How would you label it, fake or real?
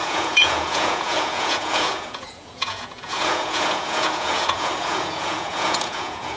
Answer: fake